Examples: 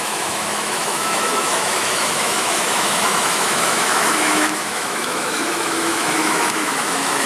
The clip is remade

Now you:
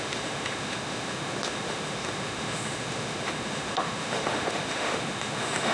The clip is remade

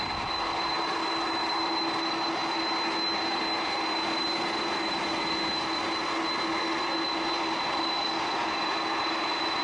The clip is recorded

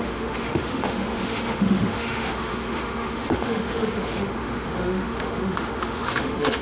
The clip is remade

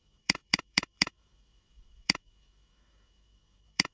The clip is remade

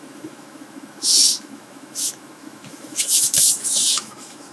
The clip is remade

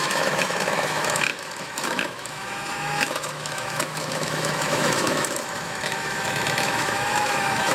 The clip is remade